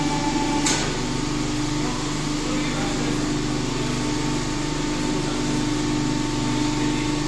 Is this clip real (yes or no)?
yes